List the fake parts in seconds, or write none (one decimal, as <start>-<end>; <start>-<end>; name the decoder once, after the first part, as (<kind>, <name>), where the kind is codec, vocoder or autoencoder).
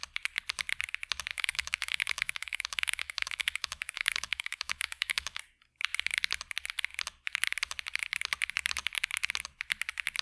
1.3-5.4 (autoencoder, DAC-VAE)